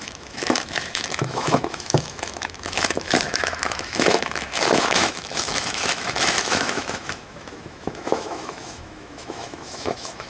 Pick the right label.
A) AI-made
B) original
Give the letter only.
A